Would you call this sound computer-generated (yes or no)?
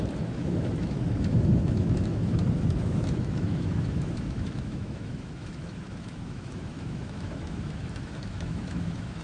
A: yes